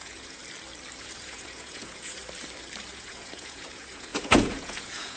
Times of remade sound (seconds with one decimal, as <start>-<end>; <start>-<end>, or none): 0.0-0.4; 1.0-2.2; 2.9-5.2